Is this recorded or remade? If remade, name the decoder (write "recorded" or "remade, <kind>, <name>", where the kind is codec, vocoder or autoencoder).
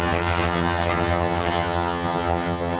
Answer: remade, vocoder, HiFi-GAN